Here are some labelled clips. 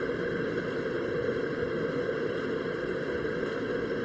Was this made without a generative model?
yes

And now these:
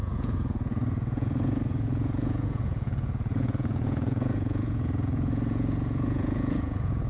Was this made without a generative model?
no